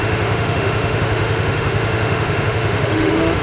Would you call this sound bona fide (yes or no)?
no